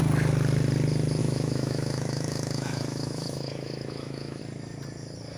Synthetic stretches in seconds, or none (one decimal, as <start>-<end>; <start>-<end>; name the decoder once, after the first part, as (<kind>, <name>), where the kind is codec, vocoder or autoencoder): 1.2-4.4 (autoencoder, DAC-VAE)